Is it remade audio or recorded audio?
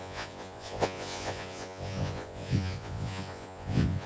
remade